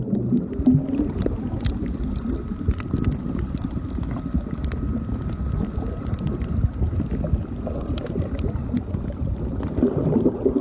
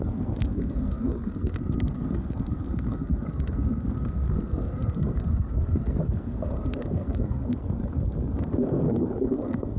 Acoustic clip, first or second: first